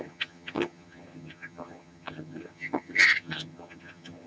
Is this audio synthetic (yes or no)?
yes